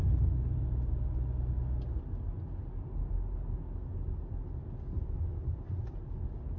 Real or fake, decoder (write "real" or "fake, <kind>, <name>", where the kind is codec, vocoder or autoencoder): real